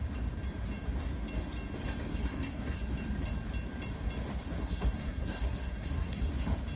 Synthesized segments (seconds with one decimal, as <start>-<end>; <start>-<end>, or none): 2.1-2.9; 4.6-6.3